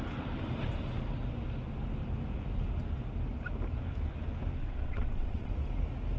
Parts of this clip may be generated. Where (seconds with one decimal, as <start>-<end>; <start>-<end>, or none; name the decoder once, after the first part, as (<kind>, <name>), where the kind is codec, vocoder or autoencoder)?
4.6-5.5 (vocoder, WaveNeXt)